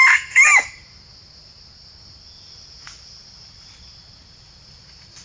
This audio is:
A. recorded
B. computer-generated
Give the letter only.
A